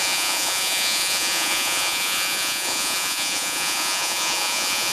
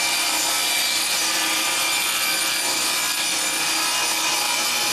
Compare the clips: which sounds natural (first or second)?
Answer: second